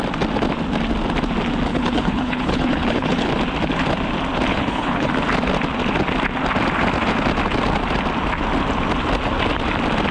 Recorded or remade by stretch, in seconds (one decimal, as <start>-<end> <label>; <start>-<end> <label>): 0.0-1.7 recorded; 1.7-3.3 remade; 3.3-4.5 recorded; 4.5-5.1 remade; 5.1-10.1 recorded